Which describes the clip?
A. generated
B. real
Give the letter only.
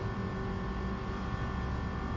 B